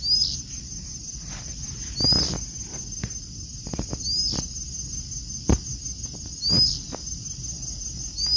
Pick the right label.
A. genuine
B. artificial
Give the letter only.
A